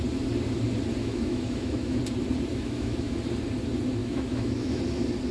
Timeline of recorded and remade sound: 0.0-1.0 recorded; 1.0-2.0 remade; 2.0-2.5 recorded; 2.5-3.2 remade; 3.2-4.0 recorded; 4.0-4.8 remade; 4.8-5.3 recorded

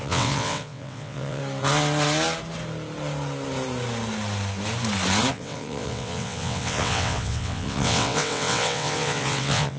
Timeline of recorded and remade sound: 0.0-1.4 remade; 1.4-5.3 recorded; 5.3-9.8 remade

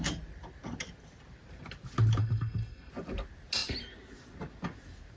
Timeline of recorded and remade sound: 0.0-2.2 recorded; 2.2-2.9 remade; 2.9-5.2 recorded

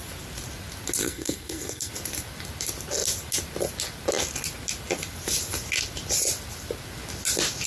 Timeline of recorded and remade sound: 0.0-1.0 recorded; 1.0-1.9 remade; 1.9-7.7 recorded

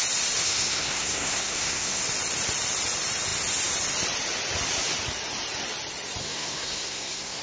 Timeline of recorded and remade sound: 0.0-0.4 recorded; 0.4-2.0 remade; 2.0-6.2 recorded; 6.2-7.4 remade

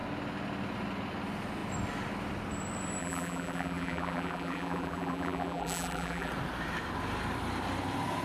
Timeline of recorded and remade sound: 0.0-3.0 recorded; 3.0-6.3 remade; 6.3-8.2 recorded

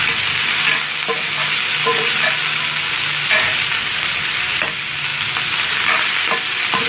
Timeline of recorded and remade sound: 0.0-6.9 recorded